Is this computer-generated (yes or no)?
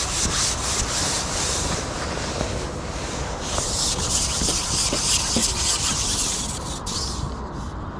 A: no